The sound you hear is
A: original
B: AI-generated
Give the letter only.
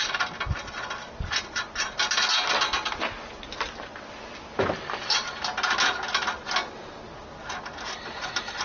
A